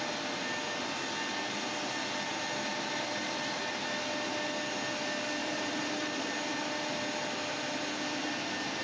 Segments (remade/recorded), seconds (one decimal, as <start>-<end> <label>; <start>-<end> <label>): 0.0-2.7 recorded; 2.7-3.7 remade; 3.7-5.4 recorded; 5.4-6.3 remade; 6.3-8.8 recorded